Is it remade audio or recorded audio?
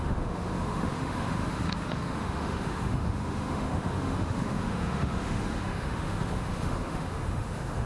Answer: remade